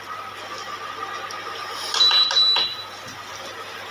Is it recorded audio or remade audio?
recorded